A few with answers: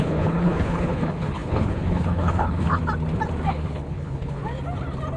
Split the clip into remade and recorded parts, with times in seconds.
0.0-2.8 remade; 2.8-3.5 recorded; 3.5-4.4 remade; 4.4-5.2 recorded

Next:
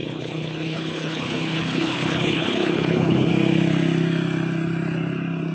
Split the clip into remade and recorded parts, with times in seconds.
0.0-3.3 remade; 3.3-5.5 recorded

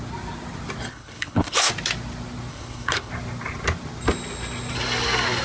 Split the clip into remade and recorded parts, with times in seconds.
0.0-0.9 recorded; 0.9-1.7 remade; 1.7-2.5 recorded; 2.5-3.1 remade; 3.1-5.4 recorded

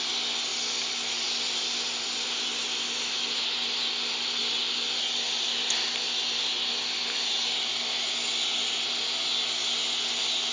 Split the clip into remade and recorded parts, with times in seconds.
0.0-10.5 recorded

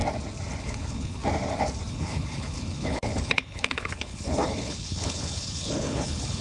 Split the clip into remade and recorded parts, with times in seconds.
0.0-0.6 recorded; 0.6-1.2 remade; 1.2-1.9 recorded; 1.9-6.4 remade